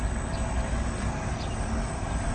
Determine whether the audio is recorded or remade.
recorded